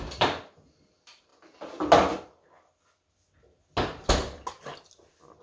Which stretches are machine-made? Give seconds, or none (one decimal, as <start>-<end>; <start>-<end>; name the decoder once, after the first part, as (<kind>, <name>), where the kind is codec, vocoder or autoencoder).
none